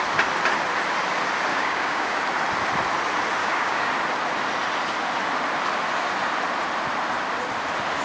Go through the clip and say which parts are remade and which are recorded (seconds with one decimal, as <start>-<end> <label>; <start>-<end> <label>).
0.0-1.5 recorded; 1.5-2.2 remade; 2.2-3.4 recorded; 3.4-3.9 remade; 3.9-8.0 recorded